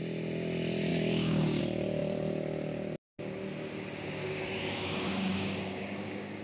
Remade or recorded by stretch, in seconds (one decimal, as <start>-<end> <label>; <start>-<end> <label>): 0.0-0.9 recorded; 0.9-1.6 remade; 1.6-4.2 recorded; 4.2-6.4 remade